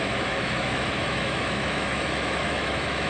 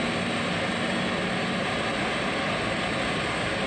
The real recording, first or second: second